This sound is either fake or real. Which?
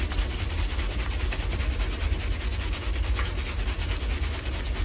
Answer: real